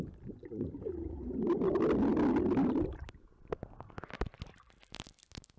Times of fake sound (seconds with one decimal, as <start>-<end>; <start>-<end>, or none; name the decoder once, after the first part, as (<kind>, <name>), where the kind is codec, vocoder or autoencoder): none